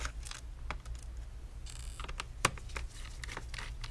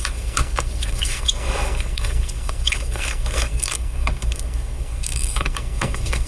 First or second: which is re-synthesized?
second